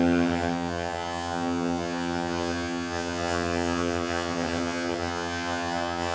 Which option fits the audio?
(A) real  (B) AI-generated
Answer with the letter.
B